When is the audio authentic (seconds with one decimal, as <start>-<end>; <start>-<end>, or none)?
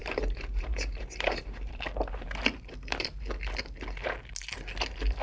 3.1-5.2